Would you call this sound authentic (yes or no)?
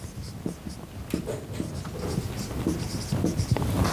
yes